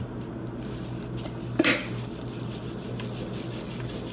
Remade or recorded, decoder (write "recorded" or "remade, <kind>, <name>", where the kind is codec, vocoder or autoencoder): recorded